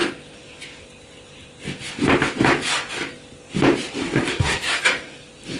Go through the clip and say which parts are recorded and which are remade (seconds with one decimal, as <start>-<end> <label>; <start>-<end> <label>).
0.0-4.0 recorded; 4.0-4.8 remade; 4.8-5.6 recorded